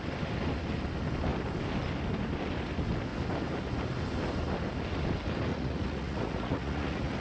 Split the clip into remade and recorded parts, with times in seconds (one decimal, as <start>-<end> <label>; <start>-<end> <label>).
0.0-5.5 recorded; 5.5-7.2 remade